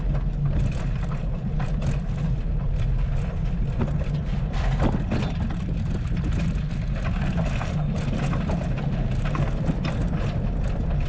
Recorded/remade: recorded